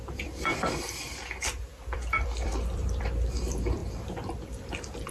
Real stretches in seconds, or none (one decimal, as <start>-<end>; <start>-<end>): none